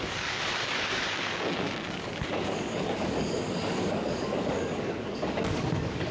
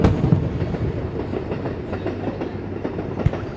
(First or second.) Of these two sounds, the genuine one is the second